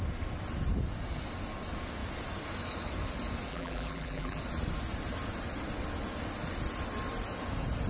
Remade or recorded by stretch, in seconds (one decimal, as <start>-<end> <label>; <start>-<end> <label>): 0.0-3.5 recorded; 3.5-4.4 remade; 4.4-7.9 recorded